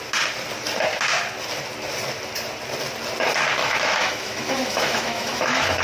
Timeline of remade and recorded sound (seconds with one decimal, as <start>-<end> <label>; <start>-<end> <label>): 0.0-3.6 recorded; 3.6-5.8 remade